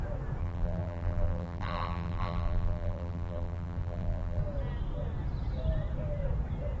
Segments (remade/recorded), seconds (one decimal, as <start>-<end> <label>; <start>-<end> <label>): 0.0-0.4 recorded; 0.4-4.4 remade; 4.4-6.8 recorded